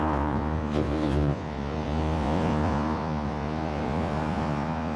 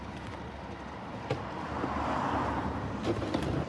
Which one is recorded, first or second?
second